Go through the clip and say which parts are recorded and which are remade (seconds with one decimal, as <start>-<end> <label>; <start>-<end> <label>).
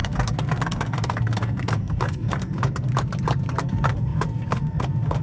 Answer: 0.0-2.9 remade; 2.9-3.6 recorded; 3.6-5.2 remade